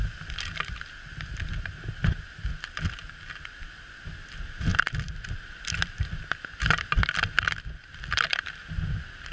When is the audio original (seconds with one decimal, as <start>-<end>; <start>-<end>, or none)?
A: 0.0-1.3; 2.8-4.7; 6.6-7.8; 8.6-9.3